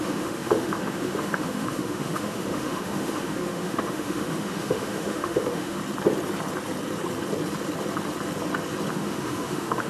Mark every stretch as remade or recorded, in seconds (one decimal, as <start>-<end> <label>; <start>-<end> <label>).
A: 0.0-5.8 remade; 5.8-8.9 recorded; 8.9-9.9 remade